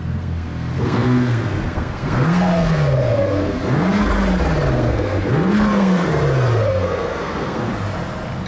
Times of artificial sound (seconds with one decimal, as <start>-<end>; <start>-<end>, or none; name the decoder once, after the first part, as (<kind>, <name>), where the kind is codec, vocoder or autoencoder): 0.0-4.1 (codec, SNAC); 4.7-6.2; 6.7-7.7